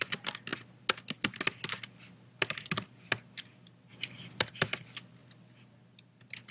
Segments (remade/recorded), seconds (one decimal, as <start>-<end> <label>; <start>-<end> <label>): 0.0-6.5 recorded